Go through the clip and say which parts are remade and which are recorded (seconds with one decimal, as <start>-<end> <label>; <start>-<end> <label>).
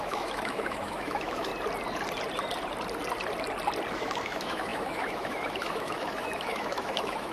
0.0-1.5 remade; 1.5-3.9 recorded; 3.9-7.3 remade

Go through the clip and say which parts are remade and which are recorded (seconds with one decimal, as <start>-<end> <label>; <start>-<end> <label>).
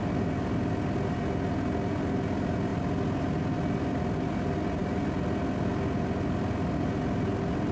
0.0-7.7 recorded